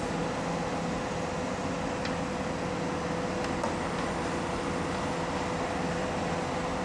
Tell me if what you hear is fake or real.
real